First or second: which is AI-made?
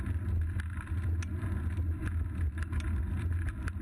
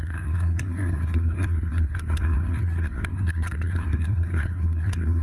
second